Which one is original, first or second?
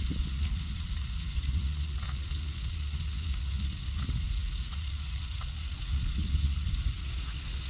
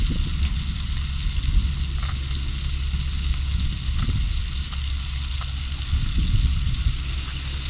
second